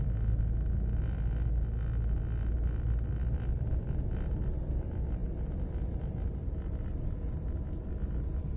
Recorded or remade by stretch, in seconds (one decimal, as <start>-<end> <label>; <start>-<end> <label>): 0.0-3.2 recorded; 3.2-4.8 remade; 4.8-5.2 recorded; 5.2-7.6 remade; 7.6-8.6 recorded